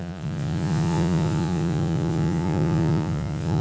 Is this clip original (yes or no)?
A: no